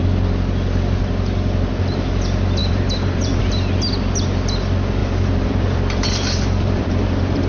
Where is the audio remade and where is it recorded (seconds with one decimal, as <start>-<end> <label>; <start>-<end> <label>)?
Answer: 0.0-2.6 recorded; 2.6-3.4 remade; 3.4-5.0 recorded; 5.0-7.5 remade